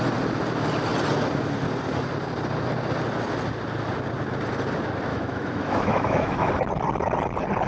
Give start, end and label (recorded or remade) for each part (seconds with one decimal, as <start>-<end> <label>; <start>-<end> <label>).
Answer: 0.0-5.1 recorded; 5.1-6.5 remade; 6.5-7.7 recorded

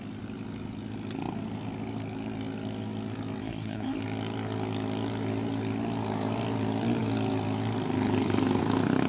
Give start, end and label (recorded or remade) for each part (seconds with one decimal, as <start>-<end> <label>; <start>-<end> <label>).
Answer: 0.0-3.4 recorded; 3.4-4.0 remade; 4.0-9.1 recorded

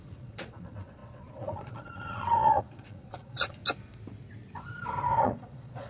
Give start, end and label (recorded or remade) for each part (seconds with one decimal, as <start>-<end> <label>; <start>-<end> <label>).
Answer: 0.0-3.6 remade; 3.6-5.2 recorded; 5.2-5.9 remade

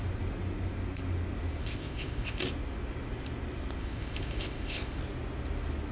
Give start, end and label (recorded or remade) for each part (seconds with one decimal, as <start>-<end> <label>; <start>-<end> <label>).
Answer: 0.0-1.6 recorded; 1.6-2.4 remade; 2.4-3.8 recorded; 3.8-5.0 remade; 5.0-5.9 recorded

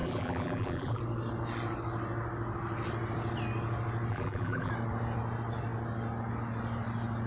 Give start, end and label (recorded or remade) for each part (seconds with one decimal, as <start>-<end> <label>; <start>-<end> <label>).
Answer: 0.0-1.0 remade; 1.0-4.1 recorded; 4.1-4.7 remade; 4.7-7.3 recorded

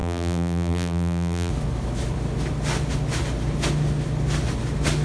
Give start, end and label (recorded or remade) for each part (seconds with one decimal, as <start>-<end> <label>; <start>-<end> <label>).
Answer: 0.0-1.5 remade; 1.5-5.0 recorded